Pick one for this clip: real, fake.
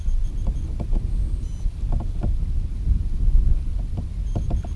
real